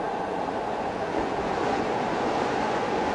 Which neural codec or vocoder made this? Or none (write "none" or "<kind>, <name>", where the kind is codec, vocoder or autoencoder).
vocoder, Vocos